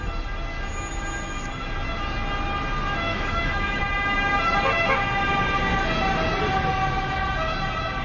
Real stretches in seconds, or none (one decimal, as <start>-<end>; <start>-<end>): 0.0-3.1; 3.8-8.0